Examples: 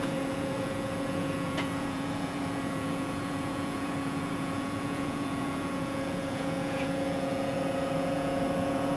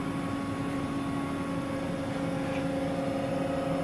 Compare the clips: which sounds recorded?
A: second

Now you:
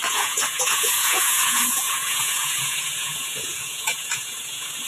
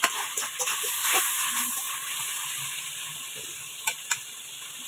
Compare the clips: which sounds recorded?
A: second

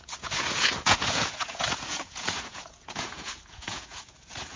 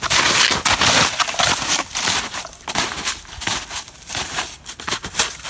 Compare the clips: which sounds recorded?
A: second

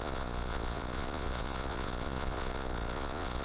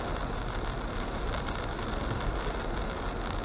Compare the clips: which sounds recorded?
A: second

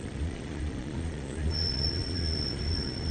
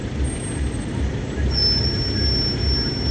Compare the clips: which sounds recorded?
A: second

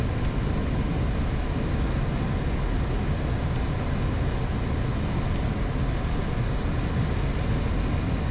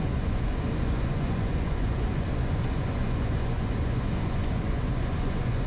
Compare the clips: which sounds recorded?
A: first